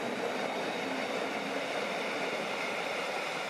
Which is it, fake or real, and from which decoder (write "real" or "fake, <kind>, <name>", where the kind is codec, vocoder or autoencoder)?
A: real